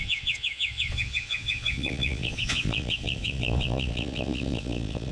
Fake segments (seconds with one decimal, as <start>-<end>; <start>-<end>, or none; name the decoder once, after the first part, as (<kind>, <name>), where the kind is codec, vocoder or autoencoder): 0.0-5.1 (vocoder, Vocos)